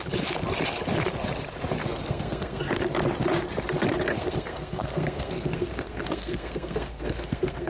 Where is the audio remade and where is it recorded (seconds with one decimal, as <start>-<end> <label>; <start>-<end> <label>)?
0.0-1.8 recorded; 1.8-2.6 remade; 2.6-4.1 recorded; 4.1-7.7 remade